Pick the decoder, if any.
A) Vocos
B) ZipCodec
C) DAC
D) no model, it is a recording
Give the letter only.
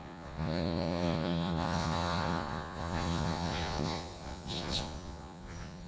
A